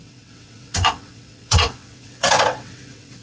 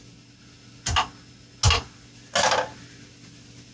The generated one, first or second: first